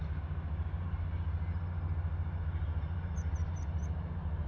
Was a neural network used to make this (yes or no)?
no